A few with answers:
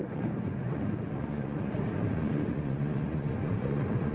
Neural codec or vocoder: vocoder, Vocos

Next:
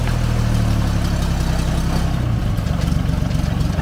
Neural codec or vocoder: none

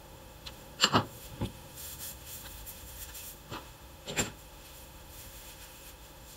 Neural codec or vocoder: autoencoder, DAC-VAE